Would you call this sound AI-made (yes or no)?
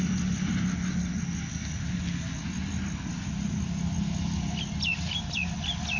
no